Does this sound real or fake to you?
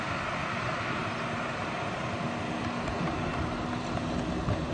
real